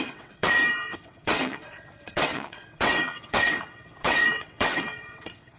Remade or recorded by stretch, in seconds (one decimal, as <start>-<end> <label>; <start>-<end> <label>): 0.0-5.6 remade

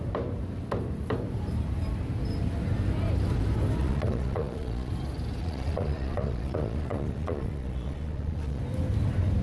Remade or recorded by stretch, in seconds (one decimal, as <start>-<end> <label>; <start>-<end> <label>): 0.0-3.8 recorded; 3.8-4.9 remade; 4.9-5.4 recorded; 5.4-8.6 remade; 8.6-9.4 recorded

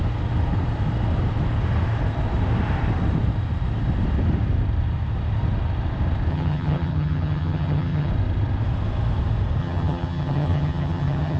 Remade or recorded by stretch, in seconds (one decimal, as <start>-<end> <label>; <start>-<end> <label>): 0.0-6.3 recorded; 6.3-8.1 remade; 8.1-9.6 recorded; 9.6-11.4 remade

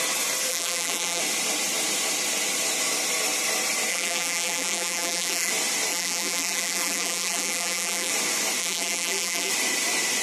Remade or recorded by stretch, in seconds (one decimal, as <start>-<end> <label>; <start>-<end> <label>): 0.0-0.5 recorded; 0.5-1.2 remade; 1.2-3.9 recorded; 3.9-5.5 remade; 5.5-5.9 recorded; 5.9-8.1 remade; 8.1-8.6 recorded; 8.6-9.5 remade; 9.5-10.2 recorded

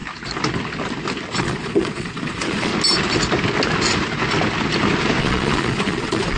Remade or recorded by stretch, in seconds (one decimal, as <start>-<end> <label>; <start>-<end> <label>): 0.0-1.4 recorded; 1.4-2.7 remade; 2.7-5.2 recorded; 5.2-6.4 remade

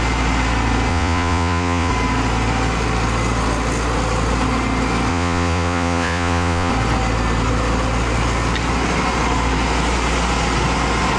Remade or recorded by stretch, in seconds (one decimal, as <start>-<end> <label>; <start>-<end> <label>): 0.0-0.9 recorded; 0.9-1.9 remade; 1.9-5.1 recorded; 5.1-6.7 remade; 6.7-11.2 recorded

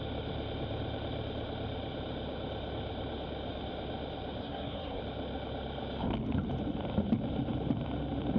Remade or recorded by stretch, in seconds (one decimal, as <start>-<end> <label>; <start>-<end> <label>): 0.0-4.4 recorded; 4.4-5.0 remade; 5.0-8.4 recorded

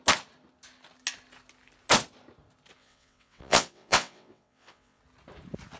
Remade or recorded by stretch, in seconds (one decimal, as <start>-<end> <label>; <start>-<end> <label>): 0.0-2.8 recorded; 2.8-5.0 remade; 5.0-5.8 recorded